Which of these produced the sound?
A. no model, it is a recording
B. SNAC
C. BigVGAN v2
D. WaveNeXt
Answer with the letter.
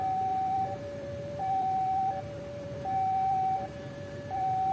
C